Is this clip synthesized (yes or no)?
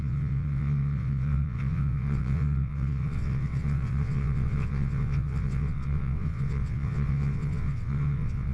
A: yes